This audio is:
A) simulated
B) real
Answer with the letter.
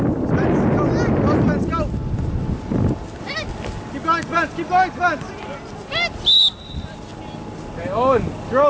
B